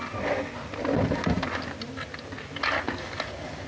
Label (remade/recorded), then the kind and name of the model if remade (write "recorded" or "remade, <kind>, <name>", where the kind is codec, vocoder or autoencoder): recorded